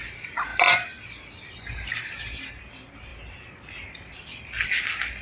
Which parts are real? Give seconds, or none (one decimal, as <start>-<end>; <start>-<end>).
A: 3.1-4.8

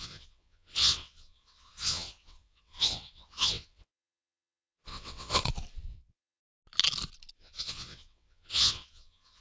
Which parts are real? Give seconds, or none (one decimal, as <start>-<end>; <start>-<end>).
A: 5.4-5.9; 6.4-7.4